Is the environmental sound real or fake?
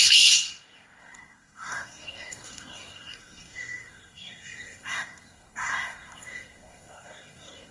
fake